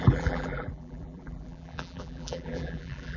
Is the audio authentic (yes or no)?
no